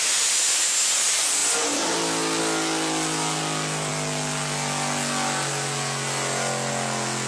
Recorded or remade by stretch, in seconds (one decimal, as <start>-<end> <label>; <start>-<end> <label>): 0.0-7.3 recorded